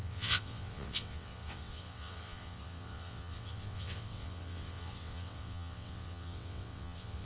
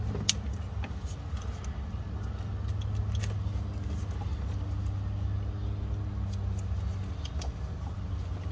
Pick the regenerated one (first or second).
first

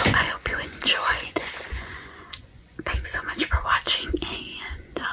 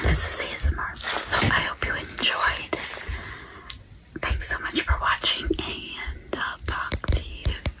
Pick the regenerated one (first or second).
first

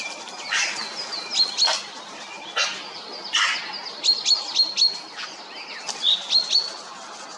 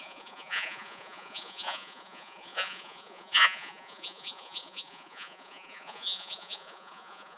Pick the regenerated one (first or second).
second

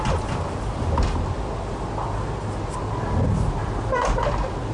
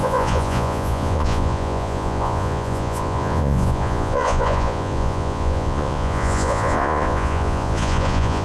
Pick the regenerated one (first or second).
second